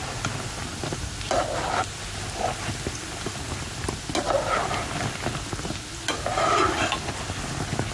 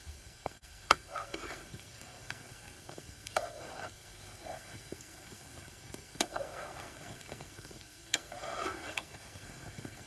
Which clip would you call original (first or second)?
first